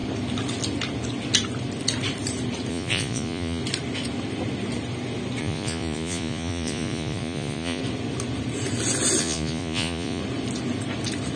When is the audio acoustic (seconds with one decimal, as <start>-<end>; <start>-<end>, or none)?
0.0-2.7; 3.6-5.4; 7.8-9.2; 10.2-11.4

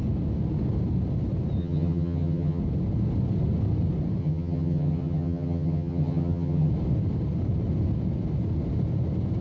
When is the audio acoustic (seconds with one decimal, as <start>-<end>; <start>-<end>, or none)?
0.0-1.6; 2.6-4.2; 6.7-9.4

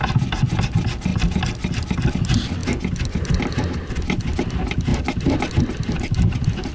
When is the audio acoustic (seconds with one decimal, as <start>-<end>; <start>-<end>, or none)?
0.0-6.7

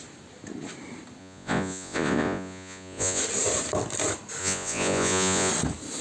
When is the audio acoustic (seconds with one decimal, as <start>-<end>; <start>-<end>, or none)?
0.0-1.2; 3.2-4.4; 5.5-6.0

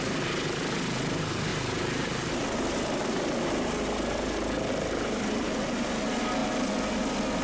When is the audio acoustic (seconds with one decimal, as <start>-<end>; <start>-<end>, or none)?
0.0-7.4

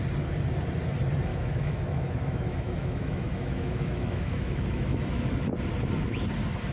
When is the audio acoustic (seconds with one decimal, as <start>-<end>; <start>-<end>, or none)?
0.0-1.3; 5.3-6.7

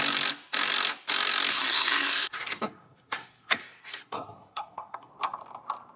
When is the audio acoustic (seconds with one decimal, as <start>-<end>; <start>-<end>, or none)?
0.0-1.5; 5.1-6.0